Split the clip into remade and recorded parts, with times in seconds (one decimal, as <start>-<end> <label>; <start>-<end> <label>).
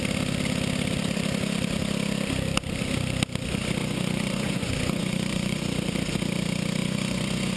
0.0-3.8 recorded; 3.8-5.6 remade; 5.6-6.8 recorded; 6.8-7.6 remade